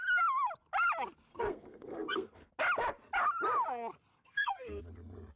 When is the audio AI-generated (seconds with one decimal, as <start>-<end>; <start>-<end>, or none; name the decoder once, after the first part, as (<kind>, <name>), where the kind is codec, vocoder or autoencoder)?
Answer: 1.3-2.5 (codec, SNAC); 4.1-4.8